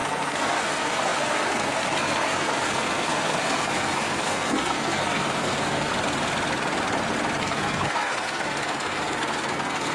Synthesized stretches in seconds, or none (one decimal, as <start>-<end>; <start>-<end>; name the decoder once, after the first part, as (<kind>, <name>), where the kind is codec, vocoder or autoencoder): 0.0-5.9 (codec, SNAC); 7.4-9.9